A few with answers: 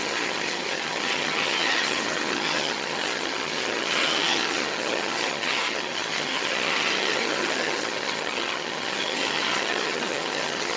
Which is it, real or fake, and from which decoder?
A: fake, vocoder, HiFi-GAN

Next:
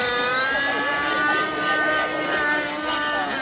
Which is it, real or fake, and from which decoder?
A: real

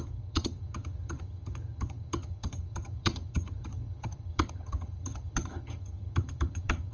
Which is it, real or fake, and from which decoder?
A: fake, vocoder, HiFi-GAN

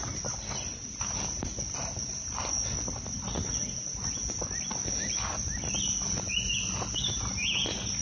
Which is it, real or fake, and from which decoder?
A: real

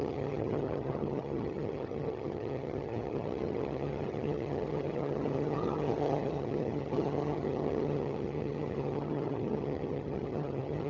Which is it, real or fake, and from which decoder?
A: fake, vocoder, HiFi-GAN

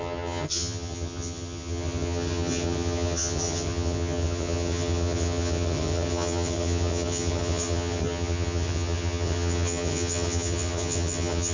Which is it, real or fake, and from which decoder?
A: fake, vocoder, HiFi-GAN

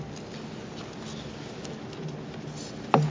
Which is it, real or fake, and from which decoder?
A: real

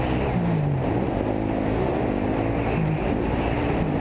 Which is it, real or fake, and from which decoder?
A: real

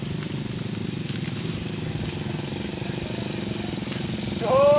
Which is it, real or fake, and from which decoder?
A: real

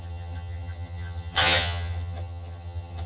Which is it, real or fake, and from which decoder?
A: fake, vocoder, HiFi-GAN